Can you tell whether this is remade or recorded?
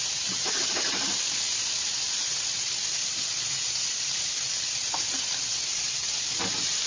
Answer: recorded